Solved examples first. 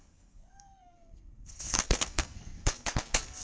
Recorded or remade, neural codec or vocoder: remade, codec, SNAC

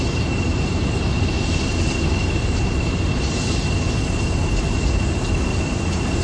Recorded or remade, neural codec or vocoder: recorded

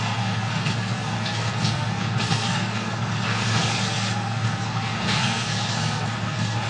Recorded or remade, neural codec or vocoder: remade, codec, SNAC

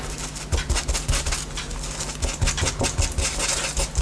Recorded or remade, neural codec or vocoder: recorded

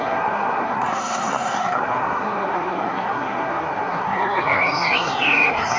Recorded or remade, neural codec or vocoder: remade, codec, SNAC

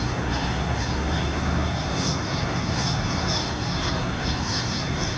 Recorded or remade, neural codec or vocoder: remade, codec, SNAC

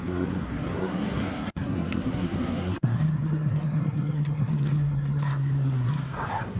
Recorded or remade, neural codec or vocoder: remade, codec, SNAC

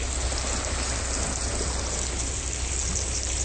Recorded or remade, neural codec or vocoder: recorded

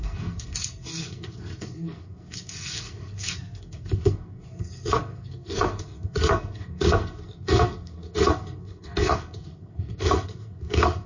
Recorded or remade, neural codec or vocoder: remade, codec, SNAC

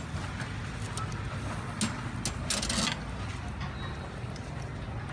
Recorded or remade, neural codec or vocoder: recorded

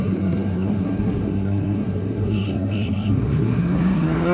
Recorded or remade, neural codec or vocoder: remade, codec, SNAC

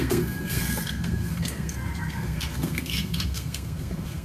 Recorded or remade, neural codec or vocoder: remade, codec, SNAC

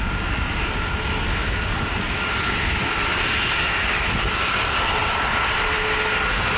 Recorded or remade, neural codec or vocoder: recorded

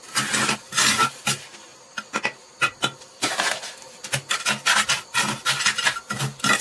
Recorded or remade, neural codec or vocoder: recorded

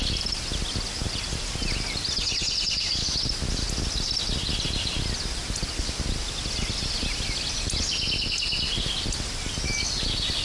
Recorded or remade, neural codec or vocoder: recorded